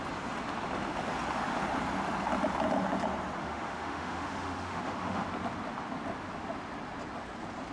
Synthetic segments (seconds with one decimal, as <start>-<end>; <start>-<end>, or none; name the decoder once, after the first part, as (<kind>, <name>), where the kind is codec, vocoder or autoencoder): 3.4-5.3 (autoencoder, DAC-VAE)